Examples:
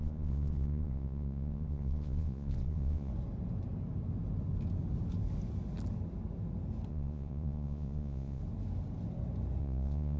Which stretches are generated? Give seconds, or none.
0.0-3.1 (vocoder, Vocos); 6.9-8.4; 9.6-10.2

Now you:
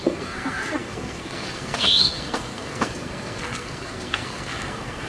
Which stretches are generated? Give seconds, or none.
0.0-5.1 (codec, SNAC)

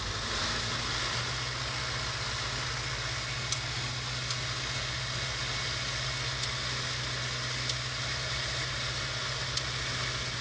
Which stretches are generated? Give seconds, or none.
none

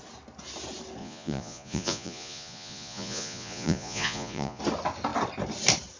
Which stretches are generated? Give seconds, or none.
1.0-4.6 (vocoder, Vocos)